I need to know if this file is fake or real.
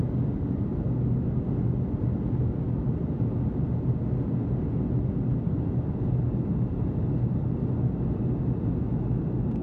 real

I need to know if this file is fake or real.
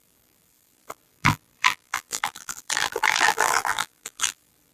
fake